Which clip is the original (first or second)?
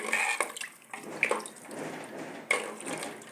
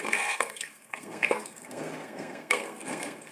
first